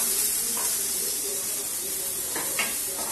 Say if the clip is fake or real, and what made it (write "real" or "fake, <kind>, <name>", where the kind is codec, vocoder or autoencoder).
real